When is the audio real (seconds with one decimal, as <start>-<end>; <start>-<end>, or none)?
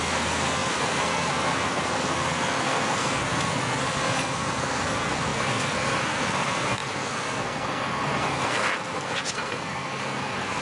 none